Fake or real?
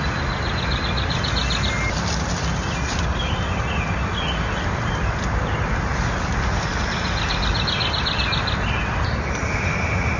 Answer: real